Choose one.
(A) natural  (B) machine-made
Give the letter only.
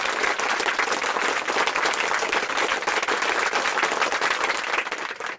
A